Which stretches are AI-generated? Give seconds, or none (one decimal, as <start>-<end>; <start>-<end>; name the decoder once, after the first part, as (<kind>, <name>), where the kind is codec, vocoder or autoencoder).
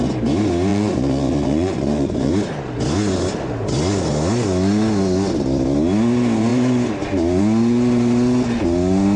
0.7-2.3 (vocoder, Vocos)